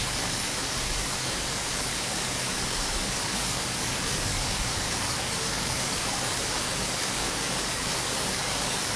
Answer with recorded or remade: remade